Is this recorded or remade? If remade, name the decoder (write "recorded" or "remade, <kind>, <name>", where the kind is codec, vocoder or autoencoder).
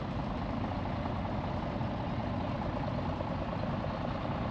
recorded